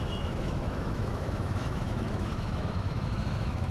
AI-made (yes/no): yes